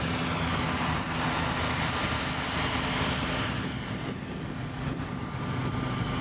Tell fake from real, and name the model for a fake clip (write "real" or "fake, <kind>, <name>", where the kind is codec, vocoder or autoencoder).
real